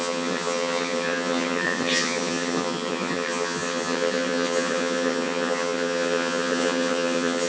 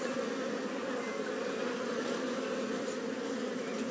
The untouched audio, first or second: second